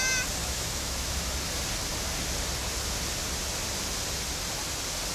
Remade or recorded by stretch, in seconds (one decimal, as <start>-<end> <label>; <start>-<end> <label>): 0.0-0.4 recorded; 0.4-1.1 remade; 1.1-5.1 recorded